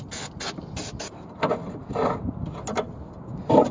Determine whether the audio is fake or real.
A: real